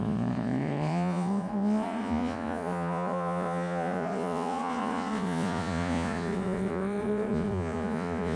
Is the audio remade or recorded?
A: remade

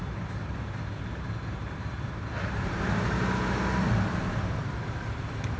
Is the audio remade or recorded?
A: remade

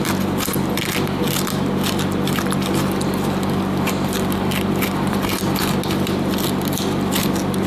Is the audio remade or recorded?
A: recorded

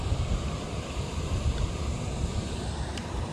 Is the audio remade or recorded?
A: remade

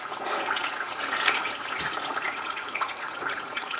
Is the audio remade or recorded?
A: remade